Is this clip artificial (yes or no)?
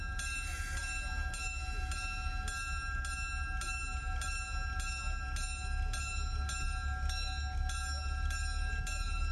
no